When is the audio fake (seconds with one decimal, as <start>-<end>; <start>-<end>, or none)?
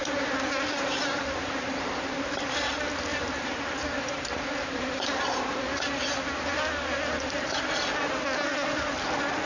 0.0-2.4; 3.1-5.6